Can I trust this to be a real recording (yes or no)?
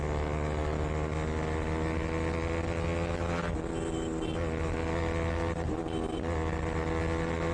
yes